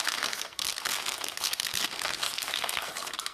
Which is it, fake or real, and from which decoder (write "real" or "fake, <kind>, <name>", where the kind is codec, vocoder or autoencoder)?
fake, codec, SNAC